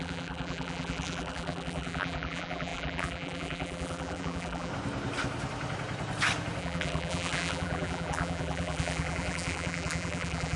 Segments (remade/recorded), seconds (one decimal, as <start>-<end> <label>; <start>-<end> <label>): 0.0-4.7 remade; 4.7-6.6 recorded; 6.6-10.6 remade